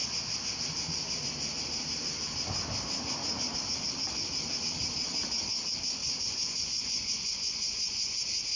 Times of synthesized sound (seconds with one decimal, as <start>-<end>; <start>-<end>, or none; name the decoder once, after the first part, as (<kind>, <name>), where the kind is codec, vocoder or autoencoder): 6.0-8.2 (vocoder, Vocos)